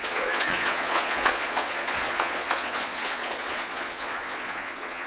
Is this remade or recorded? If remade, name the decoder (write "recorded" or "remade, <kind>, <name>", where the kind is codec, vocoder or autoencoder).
remade, vocoder, Vocos